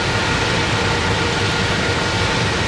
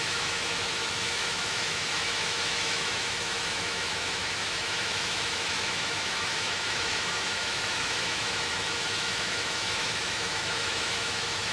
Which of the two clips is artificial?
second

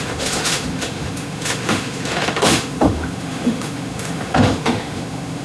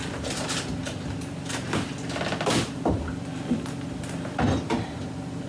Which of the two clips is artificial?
first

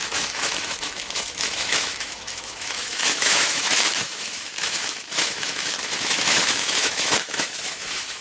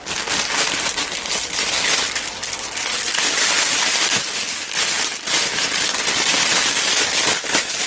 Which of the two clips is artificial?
first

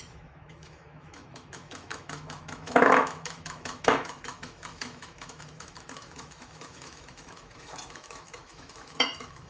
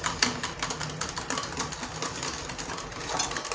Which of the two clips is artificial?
first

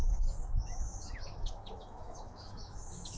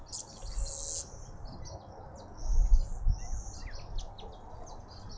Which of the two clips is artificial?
first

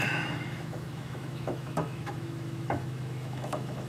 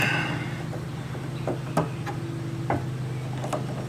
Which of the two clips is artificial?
first